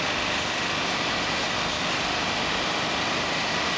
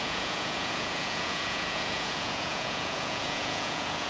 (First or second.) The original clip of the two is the first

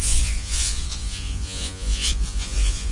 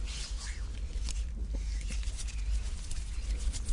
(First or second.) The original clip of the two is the second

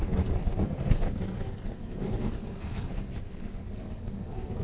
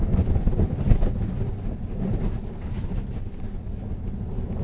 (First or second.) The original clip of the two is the second